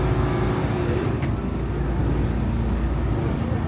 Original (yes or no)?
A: yes